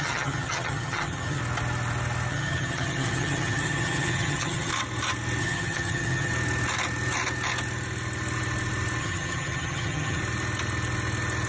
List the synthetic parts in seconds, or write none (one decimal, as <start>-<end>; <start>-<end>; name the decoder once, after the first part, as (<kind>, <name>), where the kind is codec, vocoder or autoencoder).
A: 0.0-1.4 (vocoder, HiFi-GAN); 2.3-4.7; 5.4-6.3; 9.0-10.2